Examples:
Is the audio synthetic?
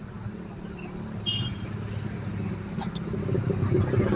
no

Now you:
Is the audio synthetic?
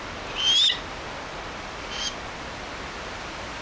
no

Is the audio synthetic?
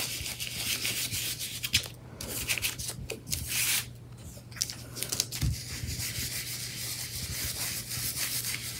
no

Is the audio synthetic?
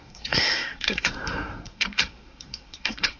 yes